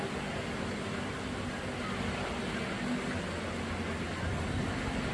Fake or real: real